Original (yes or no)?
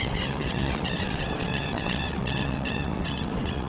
no